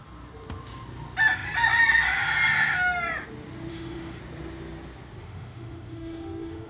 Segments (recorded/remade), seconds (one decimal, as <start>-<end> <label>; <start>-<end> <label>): 0.0-3.7 recorded; 3.7-4.2 remade; 4.2-5.2 recorded; 5.2-6.7 remade